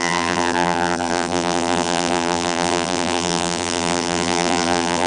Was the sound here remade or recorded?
remade